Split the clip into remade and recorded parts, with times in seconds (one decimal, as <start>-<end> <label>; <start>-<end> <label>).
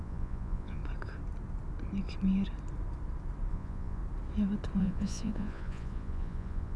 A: 0.0-0.8 remade; 0.8-3.5 recorded; 3.5-4.0 remade; 4.0-4.8 recorded; 4.8-6.8 remade